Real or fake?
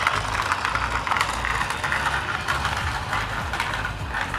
real